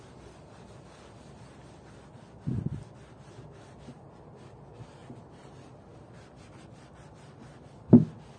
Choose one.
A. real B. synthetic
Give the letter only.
A